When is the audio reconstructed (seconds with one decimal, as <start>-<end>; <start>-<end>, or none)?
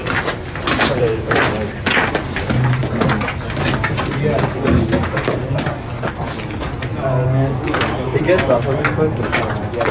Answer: none